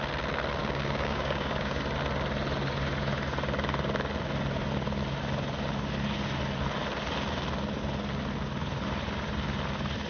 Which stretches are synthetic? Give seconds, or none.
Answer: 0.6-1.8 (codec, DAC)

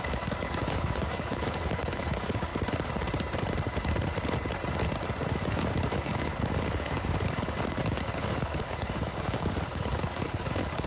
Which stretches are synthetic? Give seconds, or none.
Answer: 0.0-2.5 (codec, DAC); 5.3-10.9

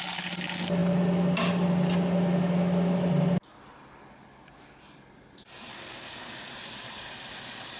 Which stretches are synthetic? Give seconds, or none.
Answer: 5.7-6.5 (codec, DAC)

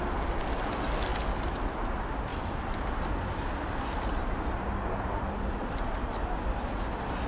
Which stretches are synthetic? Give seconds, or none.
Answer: none

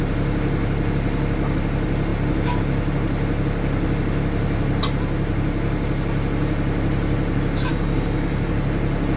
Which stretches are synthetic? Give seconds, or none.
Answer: 7.7-8.5 (codec, DAC)

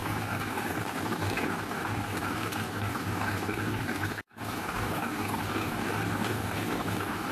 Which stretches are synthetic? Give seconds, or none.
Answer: 0.0-7.3 (codec, DAC)

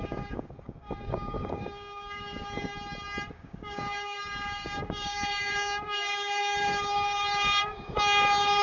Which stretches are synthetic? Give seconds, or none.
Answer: 0.0-2.7 (codec, DAC); 3.3-8.6

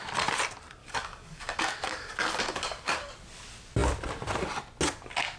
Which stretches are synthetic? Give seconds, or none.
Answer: 0.8-3.1 (codec, DAC)